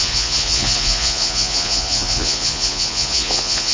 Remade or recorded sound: remade